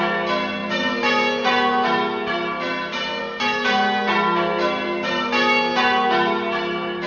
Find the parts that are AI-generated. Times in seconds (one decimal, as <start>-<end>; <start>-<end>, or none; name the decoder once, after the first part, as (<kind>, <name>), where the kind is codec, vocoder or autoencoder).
none